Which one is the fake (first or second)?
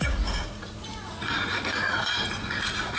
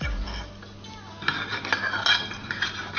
first